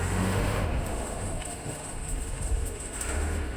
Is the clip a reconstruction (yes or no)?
yes